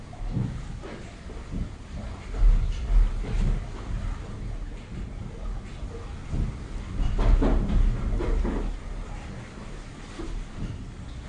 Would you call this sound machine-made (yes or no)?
no